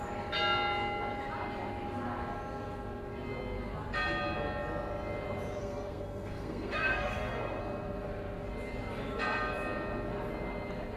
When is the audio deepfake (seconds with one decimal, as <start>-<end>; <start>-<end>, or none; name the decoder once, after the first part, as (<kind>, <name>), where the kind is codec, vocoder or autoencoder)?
5.6-7.6 (codec, SNAC)